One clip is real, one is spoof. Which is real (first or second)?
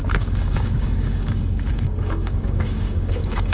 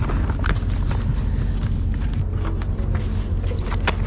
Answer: second